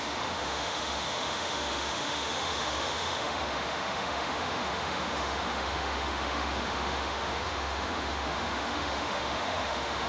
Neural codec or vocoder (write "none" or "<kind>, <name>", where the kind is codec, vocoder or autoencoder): autoencoder, DAC-VAE